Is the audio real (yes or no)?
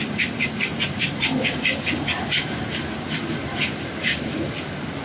no